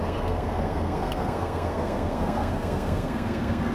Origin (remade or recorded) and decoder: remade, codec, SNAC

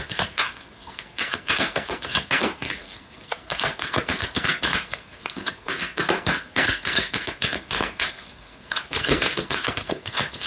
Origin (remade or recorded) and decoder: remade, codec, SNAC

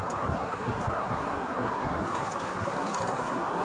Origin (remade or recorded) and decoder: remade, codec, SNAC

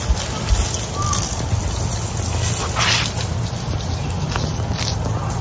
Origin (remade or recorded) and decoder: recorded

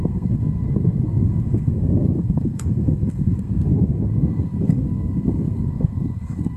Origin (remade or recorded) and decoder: remade, codec, SNAC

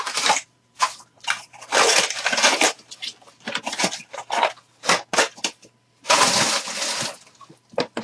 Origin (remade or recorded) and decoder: recorded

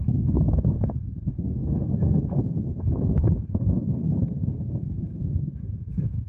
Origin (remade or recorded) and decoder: remade, codec, SNAC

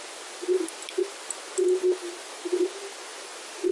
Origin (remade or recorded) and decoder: recorded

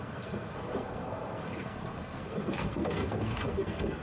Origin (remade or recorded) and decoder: remade, codec, SNAC